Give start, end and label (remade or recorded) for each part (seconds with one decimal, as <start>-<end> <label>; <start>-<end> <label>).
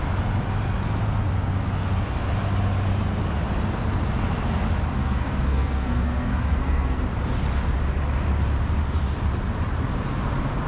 0.0-5.0 recorded; 5.0-7.0 remade; 7.0-10.7 recorded